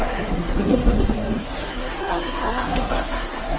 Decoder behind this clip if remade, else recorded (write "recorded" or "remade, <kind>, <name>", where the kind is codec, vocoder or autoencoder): remade, codec, SNAC